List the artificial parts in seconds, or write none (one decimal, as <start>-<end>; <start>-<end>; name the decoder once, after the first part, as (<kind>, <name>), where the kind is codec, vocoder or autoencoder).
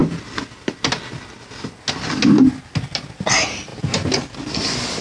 none